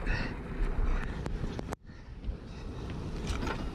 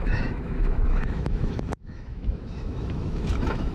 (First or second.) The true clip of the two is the first